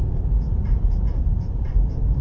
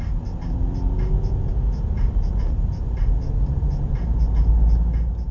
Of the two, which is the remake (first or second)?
first